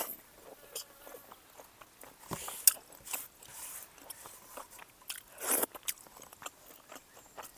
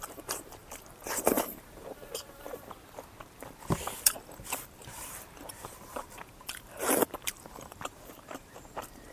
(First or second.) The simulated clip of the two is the second